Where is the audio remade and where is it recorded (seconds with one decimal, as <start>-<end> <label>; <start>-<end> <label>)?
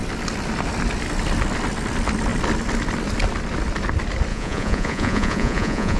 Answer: 0.0-4.3 recorded; 4.3-6.0 remade